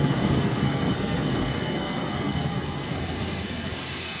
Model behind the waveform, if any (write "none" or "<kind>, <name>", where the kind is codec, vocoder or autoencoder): codec, SNAC